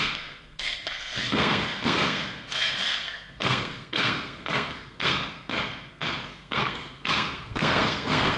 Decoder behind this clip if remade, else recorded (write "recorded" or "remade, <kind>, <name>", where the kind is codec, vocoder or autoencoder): remade, codec, SNAC